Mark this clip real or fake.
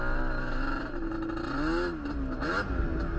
real